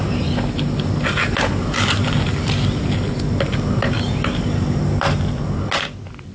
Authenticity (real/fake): real